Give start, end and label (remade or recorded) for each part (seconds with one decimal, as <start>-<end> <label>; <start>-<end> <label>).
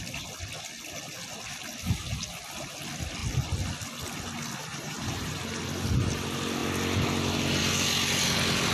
0.0-4.7 recorded; 4.7-5.3 remade; 5.3-8.7 recorded